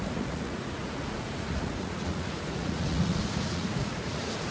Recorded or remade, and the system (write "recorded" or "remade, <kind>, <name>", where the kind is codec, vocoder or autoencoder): remade, vocoder, Vocos